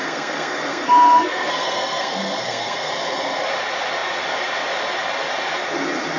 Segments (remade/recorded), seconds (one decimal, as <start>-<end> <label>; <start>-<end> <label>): 0.0-2.9 remade; 2.9-6.2 recorded